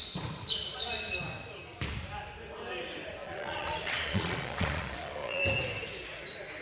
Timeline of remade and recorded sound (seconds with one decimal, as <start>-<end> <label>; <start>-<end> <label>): 0.0-3.2 recorded; 3.2-5.4 remade; 5.4-6.6 recorded